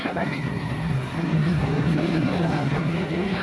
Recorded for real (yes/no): no